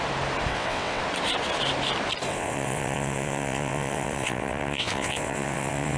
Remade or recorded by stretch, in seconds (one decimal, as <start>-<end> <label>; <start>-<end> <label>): 0.0-0.5 recorded; 0.5-1.0 remade; 1.0-2.3 recorded; 2.3-6.0 remade